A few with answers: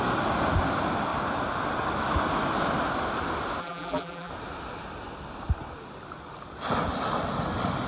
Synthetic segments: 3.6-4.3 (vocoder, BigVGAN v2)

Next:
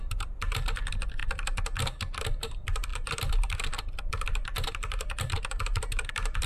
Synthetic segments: 0.0-6.5 (vocoder, BigVGAN v2)

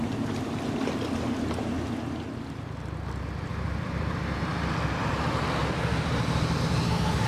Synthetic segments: 3.5-7.3 (vocoder, BigVGAN v2)

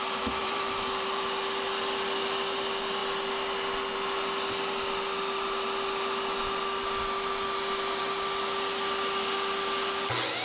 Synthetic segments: 0.4-1.2 (vocoder, BigVGAN v2)

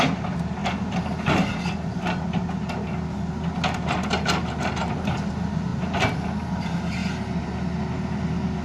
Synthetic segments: none

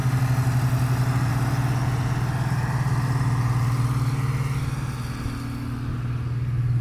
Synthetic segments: none